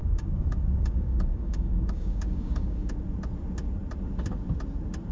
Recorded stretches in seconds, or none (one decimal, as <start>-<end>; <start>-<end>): 2.9-5.1